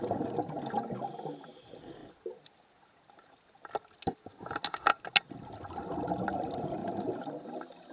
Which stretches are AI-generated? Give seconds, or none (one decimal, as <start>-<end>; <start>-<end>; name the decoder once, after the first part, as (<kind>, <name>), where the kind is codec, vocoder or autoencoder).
6.8-7.3 (vocoder, BigVGAN v2)